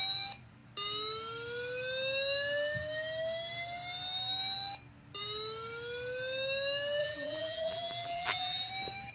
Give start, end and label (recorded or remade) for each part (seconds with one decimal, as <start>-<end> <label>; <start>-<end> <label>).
0.0-7.0 recorded; 7.0-8.7 remade; 8.7-9.1 recorded